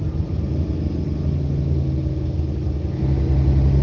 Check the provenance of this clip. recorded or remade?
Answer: recorded